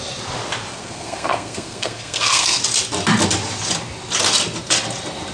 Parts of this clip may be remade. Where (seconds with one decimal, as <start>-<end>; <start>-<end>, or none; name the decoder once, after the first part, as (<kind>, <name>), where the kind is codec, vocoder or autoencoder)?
0.7-2.6 (codec, SNAC)